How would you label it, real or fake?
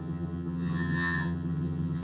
fake